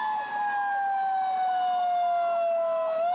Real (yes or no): yes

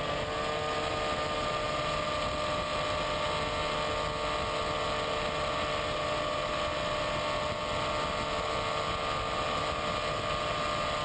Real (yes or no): yes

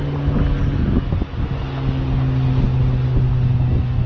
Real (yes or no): yes